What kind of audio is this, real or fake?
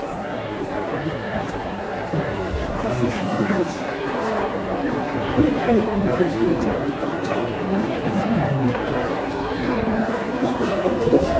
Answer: fake